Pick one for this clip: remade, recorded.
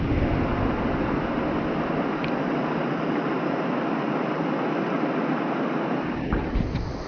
recorded